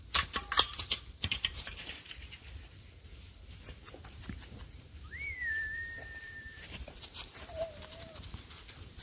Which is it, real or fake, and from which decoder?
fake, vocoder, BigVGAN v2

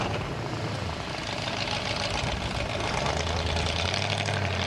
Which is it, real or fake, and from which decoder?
real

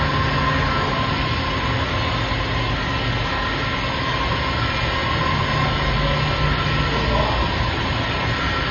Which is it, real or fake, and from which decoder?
real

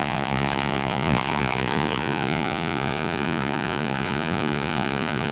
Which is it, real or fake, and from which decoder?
fake, vocoder, Vocos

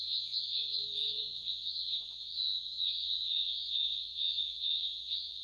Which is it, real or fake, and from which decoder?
fake, vocoder, Vocos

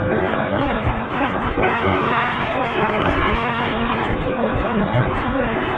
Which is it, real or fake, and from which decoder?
fake, codec, SNAC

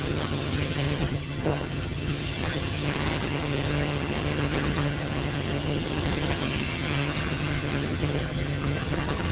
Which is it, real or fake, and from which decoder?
fake, vocoder, HiFi-GAN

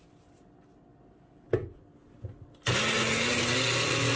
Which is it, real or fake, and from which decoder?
real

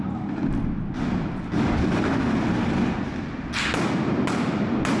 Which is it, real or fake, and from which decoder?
real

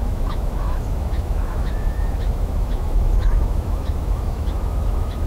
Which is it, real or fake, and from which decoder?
fake, autoencoder, DAC-VAE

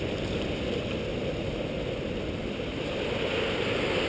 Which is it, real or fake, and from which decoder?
real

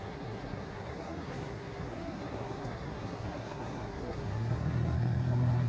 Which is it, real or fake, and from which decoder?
fake, codec, SNAC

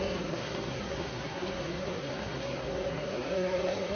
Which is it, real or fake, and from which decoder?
fake, codec, SNAC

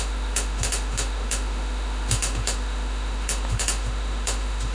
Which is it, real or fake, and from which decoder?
fake, autoencoder, DAC-VAE